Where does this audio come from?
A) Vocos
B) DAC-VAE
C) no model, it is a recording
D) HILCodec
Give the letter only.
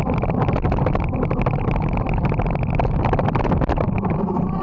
C